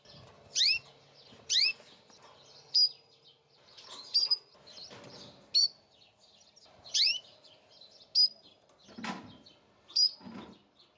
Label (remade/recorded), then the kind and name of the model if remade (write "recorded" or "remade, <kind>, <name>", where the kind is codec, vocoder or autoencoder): recorded